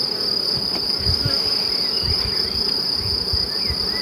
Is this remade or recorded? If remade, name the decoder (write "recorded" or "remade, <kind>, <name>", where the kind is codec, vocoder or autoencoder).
recorded